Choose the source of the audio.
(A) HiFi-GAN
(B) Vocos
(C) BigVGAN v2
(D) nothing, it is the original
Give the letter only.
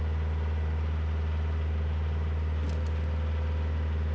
D